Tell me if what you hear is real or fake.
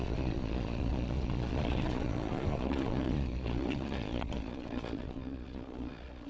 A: fake